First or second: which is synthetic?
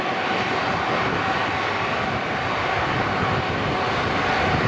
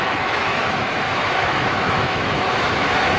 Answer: second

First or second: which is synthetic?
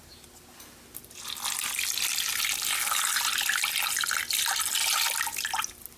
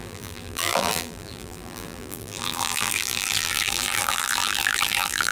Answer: second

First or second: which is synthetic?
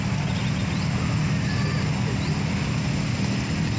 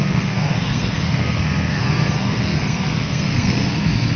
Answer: second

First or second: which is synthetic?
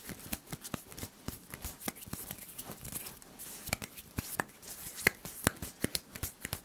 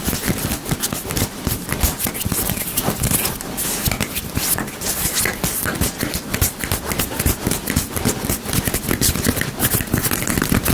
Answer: first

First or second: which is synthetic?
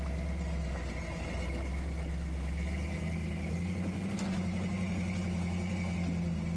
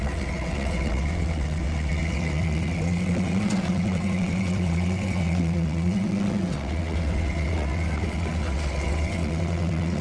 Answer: second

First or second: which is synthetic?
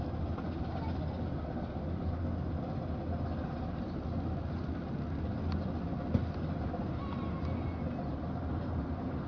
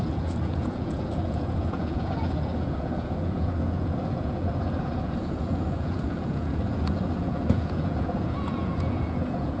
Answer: second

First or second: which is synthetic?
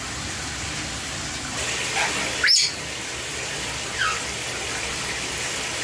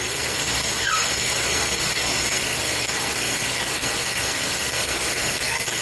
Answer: second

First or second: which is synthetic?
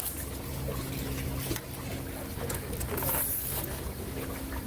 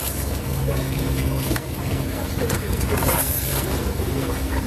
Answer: second